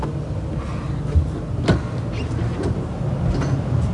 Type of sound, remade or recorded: recorded